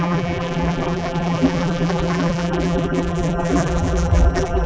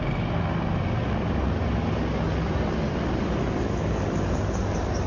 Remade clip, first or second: first